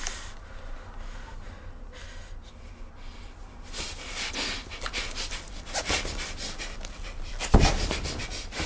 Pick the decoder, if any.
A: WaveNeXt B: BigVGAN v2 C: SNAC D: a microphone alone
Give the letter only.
D